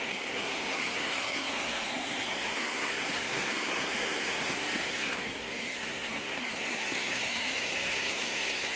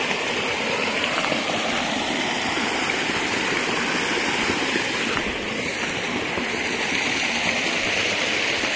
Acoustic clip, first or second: second